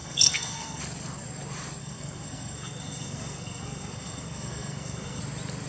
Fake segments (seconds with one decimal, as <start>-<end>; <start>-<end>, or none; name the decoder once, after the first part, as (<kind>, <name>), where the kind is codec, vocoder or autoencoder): 0.0-0.8 (codec, SNAC); 1.8-5.2